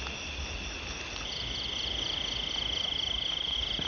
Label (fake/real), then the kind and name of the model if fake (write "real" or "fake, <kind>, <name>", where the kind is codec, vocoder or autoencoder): real